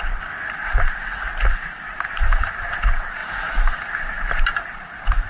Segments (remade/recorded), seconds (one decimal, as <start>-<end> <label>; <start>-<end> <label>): 0.0-5.3 recorded